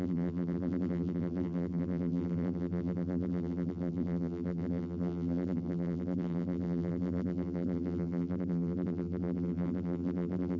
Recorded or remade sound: remade